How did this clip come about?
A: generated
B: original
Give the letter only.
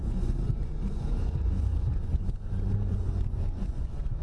A